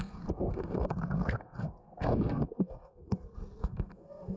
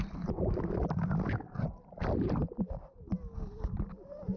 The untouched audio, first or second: second